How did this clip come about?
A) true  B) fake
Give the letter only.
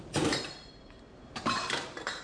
B